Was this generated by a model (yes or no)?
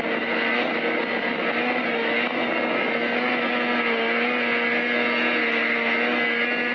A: no